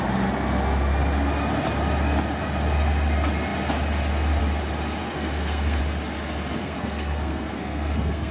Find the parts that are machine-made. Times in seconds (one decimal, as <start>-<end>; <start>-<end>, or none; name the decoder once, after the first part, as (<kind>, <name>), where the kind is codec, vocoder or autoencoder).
5.0-5.8 (codec, SNAC); 6.6-8.3

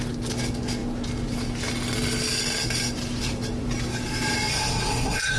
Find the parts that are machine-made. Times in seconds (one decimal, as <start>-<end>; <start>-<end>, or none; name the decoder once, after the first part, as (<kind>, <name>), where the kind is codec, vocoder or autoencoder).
4.5-5.4 (codec, SNAC)

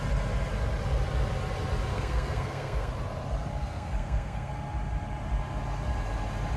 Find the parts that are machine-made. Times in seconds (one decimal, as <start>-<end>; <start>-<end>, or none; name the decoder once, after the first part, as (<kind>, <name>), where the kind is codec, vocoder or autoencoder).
1.9-2.9 (codec, SNAC); 3.6-4.5